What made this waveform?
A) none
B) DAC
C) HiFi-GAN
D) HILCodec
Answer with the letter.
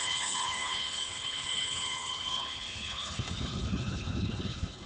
D